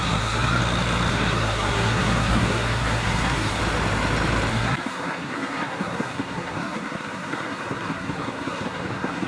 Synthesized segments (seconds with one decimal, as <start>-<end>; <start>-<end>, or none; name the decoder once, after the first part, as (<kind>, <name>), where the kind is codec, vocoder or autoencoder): 0.0-0.6 (codec, SNAC); 1.1-3.6; 4.5-9.3